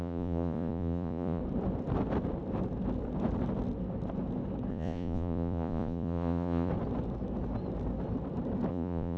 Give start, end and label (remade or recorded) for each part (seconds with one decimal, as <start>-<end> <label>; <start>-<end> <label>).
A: 0.0-1.4 remade; 1.4-4.7 recorded; 4.7-6.7 remade; 6.7-8.7 recorded; 8.7-9.2 remade